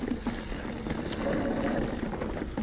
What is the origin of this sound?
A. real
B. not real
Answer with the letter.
A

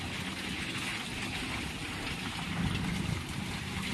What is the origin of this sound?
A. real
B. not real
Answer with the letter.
A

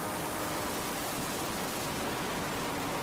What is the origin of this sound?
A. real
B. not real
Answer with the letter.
A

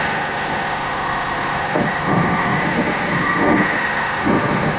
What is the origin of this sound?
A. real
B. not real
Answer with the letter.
B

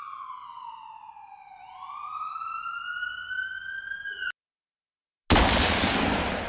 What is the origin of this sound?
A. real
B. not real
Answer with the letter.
A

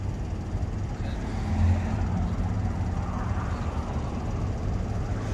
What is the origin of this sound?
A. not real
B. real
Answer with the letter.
B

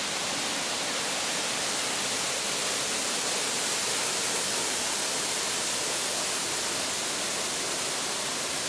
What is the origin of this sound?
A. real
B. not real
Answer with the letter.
A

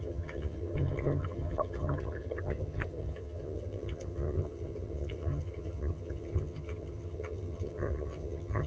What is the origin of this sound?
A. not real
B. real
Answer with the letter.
A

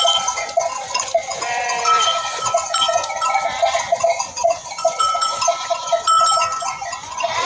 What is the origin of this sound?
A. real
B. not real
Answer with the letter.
B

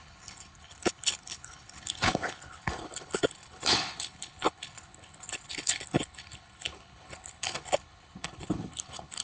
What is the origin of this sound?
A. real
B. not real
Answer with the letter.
B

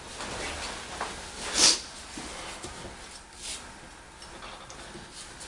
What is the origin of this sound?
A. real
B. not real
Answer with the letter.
A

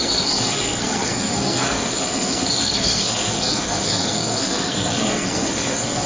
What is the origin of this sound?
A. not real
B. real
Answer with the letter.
A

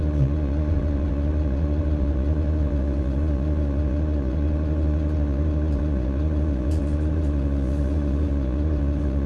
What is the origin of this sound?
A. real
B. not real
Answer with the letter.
B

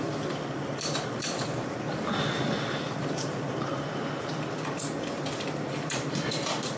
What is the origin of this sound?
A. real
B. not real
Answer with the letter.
B